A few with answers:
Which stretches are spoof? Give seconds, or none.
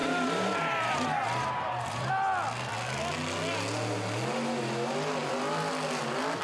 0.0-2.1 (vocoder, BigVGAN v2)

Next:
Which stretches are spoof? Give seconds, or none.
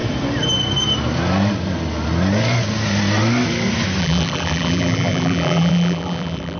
4.0-6.6 (vocoder, BigVGAN v2)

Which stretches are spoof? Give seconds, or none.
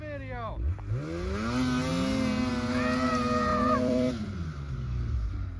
3.5-4.1 (vocoder, BigVGAN v2)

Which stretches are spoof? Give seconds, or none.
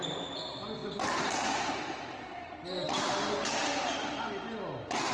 0.8-1.7 (vocoder, BigVGAN v2); 3.6-4.1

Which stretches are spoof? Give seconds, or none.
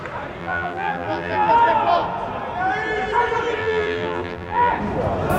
0.4-1.5 (vocoder, BigVGAN v2); 3.6-4.7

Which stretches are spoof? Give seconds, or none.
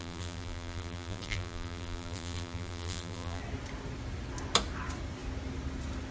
0.0-3.4 (vocoder, BigVGAN v2)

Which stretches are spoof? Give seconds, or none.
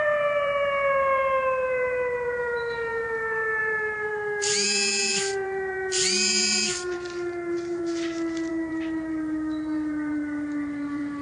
0.0-7.8 (vocoder, BigVGAN v2); 8.5-11.2